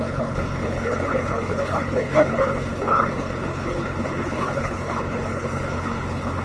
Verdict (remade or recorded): remade